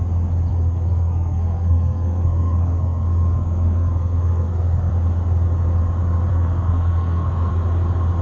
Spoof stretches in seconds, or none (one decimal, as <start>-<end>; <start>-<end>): 0.5-4.9; 6.3-7.5